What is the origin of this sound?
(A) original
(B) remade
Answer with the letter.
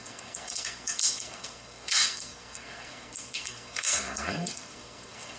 B